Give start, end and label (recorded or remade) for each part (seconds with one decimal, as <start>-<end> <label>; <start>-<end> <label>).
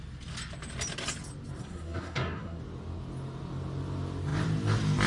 0.0-1.6 recorded; 1.6-2.6 remade; 2.6-5.1 recorded